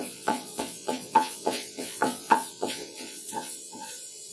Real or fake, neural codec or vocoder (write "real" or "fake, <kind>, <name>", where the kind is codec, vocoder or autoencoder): fake, vocoder, Vocos